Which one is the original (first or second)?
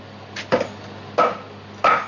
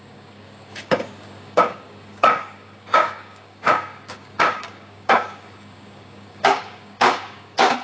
first